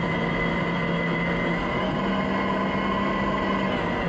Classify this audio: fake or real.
real